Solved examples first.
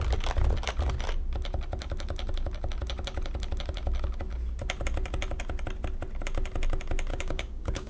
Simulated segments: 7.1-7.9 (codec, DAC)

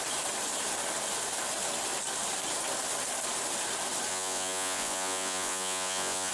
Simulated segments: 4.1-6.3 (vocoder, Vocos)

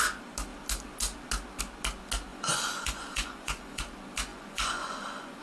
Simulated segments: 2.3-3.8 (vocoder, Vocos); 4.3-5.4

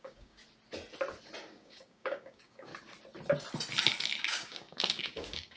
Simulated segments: 0.0-0.4 (codec, DAC); 1.5-2.7; 4.2-5.6